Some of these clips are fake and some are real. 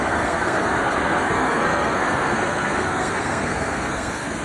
fake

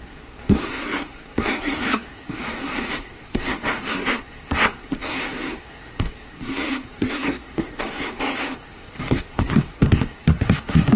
fake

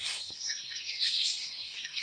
fake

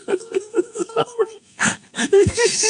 fake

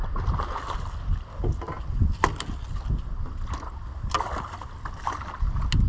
real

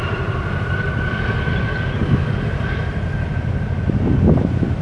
real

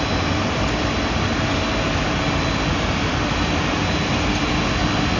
real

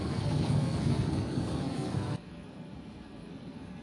fake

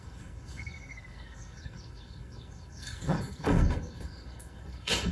fake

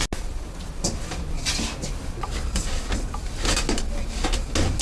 real